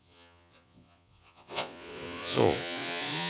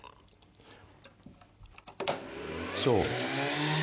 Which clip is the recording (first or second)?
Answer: second